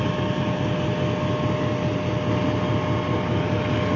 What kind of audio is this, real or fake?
real